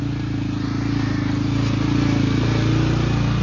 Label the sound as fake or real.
real